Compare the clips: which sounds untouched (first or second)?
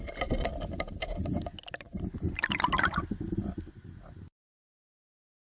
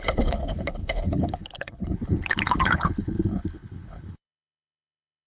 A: first